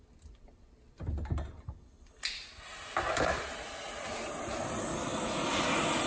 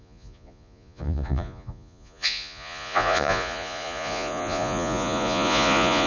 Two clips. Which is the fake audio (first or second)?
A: second